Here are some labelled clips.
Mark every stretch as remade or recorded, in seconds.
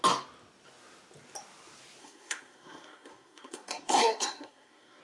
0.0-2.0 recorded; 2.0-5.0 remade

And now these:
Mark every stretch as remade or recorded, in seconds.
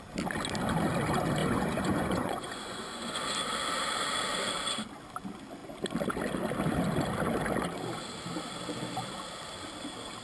0.0-1.4 recorded; 1.4-3.2 remade; 3.2-10.2 recorded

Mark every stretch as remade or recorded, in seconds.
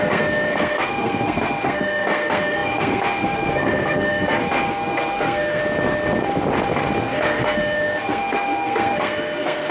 0.0-5.6 remade; 5.6-7.0 recorded; 7.0-9.7 remade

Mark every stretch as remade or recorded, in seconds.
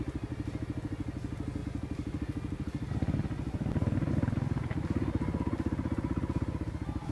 0.0-7.1 recorded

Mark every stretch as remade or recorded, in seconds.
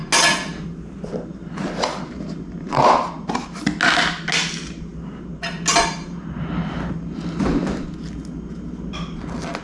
0.0-9.6 recorded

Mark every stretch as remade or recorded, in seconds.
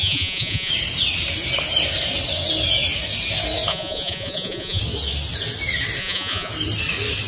0.0-0.7 remade; 0.7-3.7 recorded; 3.7-4.8 remade; 4.8-6.0 recorded; 6.0-6.5 remade; 6.5-7.3 recorded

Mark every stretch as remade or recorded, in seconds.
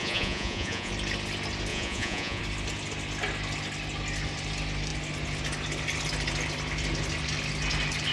0.0-0.9 remade; 0.9-1.7 recorded; 1.7-2.4 remade; 2.4-8.1 recorded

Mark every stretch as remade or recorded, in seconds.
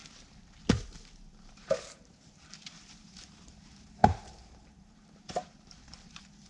0.0-1.3 recorded; 1.3-6.5 remade